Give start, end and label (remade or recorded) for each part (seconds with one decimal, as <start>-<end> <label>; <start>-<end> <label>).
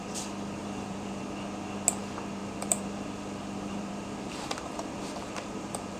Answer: 0.0-0.6 recorded; 0.6-1.2 remade; 1.2-2.4 recorded; 2.4-6.0 remade